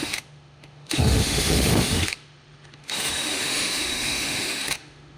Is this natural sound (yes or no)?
no